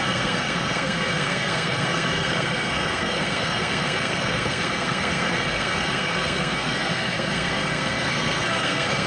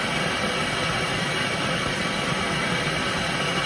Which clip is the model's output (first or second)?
first